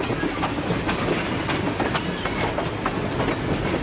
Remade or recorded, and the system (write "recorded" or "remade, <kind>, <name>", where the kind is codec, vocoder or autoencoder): recorded